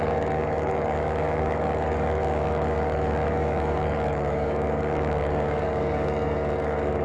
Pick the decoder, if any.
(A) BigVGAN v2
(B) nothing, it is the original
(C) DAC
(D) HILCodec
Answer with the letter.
C